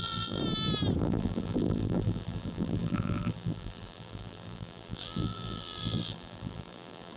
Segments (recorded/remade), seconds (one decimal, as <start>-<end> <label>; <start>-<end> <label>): 0.0-0.4 remade; 0.4-1.0 recorded; 1.0-7.2 remade